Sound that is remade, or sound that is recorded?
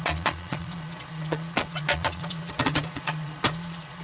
remade